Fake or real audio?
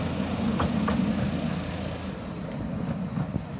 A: real